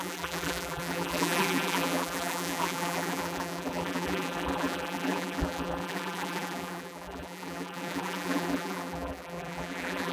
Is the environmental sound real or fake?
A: fake